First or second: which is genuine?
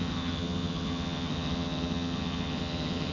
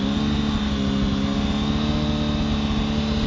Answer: second